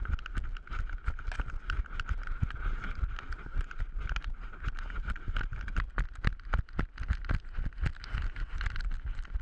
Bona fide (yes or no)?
yes